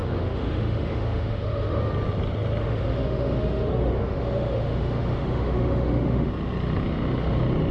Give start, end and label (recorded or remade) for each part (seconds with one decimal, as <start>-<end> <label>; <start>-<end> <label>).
0.0-1.8 remade; 1.8-2.6 recorded; 2.6-6.3 remade; 6.3-7.7 recorded